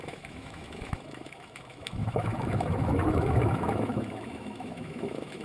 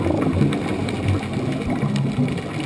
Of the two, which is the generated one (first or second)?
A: first